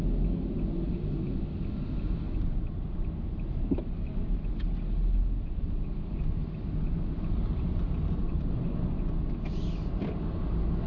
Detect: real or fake real